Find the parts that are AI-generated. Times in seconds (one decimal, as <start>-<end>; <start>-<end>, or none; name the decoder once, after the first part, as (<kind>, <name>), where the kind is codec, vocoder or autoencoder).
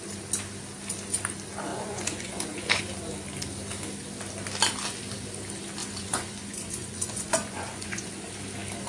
1.7-2.8 (vocoder, Vocos); 5.8-8.1